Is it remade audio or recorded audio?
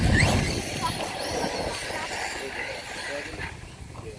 recorded